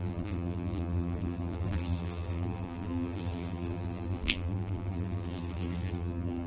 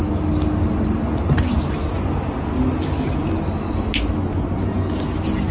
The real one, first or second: second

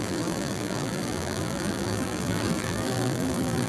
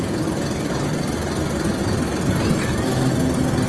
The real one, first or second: second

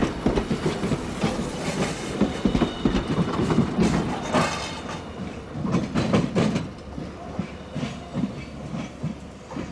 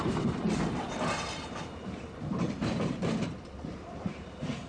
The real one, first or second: first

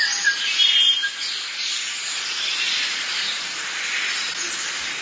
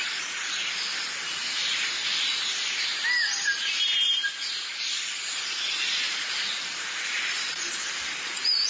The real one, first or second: first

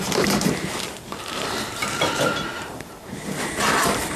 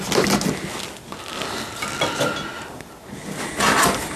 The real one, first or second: second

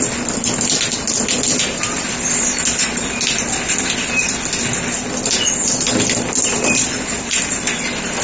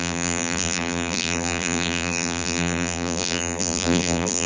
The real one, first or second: first